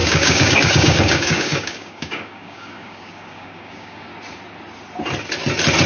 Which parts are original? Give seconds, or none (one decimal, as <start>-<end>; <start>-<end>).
4.1-5.9